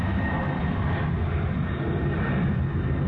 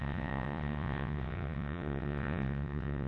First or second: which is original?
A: first